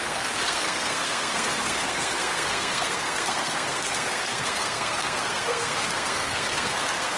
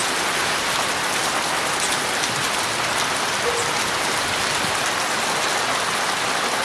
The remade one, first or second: first